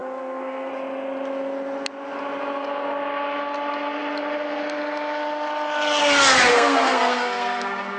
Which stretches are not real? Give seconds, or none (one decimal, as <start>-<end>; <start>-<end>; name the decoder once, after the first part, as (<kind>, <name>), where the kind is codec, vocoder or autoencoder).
0.0-0.7 (codec, SNAC); 6.5-8.0